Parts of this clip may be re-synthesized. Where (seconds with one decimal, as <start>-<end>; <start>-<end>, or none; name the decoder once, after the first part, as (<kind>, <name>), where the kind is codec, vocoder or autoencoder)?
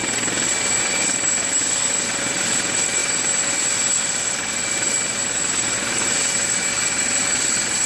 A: none